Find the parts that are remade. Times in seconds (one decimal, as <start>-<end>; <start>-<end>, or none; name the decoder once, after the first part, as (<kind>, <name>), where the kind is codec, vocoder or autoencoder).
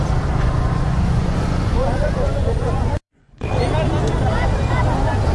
0.4-3.5 (vocoder, Vocos)